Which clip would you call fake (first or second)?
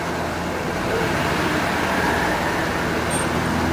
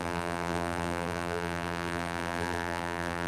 second